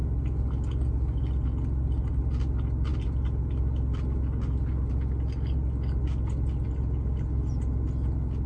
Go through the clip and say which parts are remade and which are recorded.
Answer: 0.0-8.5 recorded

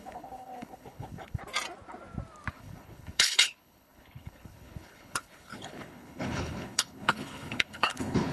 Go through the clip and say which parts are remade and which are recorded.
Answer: 0.0-1.4 remade; 1.4-2.5 recorded; 2.5-8.3 remade